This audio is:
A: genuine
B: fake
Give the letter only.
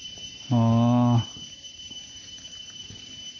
A